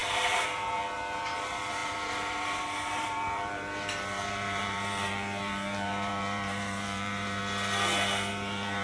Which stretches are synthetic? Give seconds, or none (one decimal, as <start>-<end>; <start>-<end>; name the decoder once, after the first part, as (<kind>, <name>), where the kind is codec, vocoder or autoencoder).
0.0-7.4 (vocoder, BigVGAN v2); 8.3-8.8